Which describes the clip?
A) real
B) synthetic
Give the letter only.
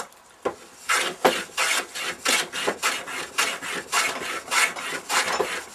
A